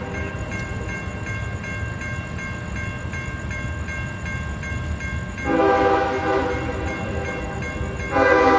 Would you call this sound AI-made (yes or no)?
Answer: no